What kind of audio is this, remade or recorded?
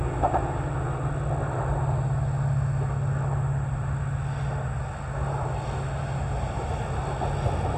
recorded